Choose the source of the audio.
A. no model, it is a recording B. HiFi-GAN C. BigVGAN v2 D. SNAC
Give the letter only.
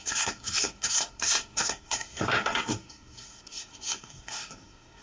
D